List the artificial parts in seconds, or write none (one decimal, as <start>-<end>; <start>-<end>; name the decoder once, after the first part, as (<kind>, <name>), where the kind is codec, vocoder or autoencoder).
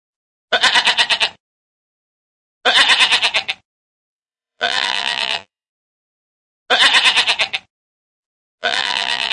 4.1-5.7 (vocoder, BigVGAN v2); 8.6-9.3